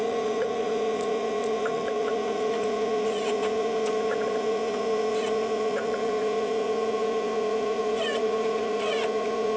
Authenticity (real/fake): fake